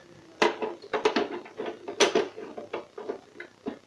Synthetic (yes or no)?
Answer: no